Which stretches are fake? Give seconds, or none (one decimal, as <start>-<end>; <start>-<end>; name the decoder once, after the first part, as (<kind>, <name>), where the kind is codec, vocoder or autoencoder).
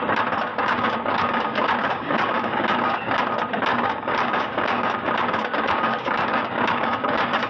0.5-3.2 (codec, DAC); 3.7-7.5